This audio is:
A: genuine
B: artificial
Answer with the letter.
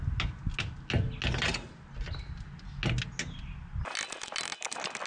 A